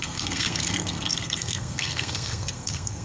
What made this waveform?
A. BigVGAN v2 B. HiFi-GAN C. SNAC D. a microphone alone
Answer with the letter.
C